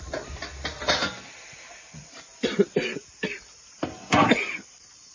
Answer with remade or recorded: remade